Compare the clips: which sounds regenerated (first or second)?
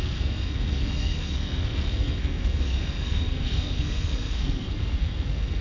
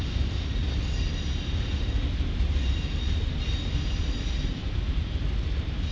first